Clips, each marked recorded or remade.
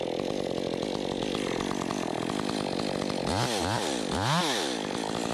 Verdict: recorded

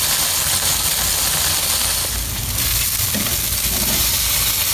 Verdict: recorded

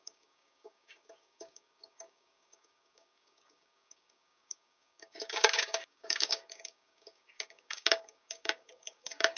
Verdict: remade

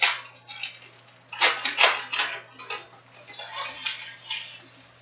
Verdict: recorded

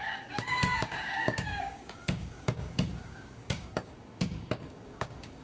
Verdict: remade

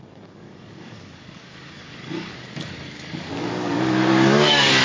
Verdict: remade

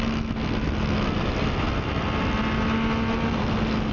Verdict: recorded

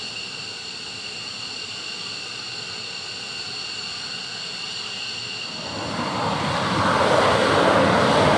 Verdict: recorded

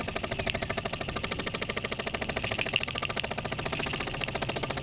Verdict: recorded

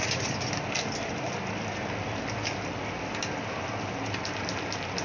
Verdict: recorded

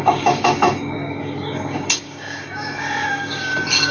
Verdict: remade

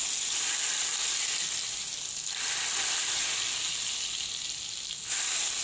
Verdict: recorded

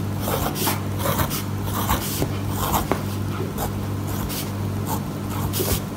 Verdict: recorded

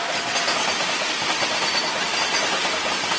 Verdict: recorded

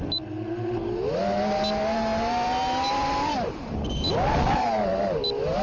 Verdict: recorded